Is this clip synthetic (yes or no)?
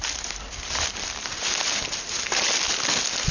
no